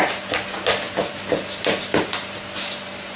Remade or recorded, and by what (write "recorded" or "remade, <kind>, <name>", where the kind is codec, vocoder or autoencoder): recorded